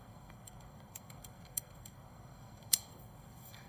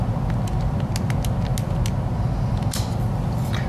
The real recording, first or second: second